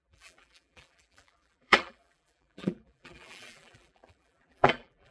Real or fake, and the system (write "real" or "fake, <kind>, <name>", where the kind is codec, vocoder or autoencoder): fake, vocoder, BigVGAN v2